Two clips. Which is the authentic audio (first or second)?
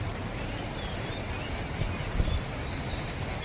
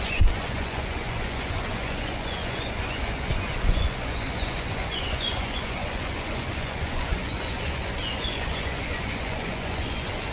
first